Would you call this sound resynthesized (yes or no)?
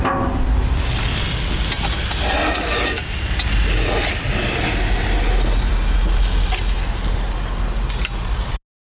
no